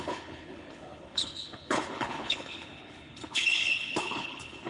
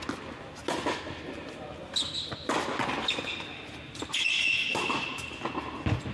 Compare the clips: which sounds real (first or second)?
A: second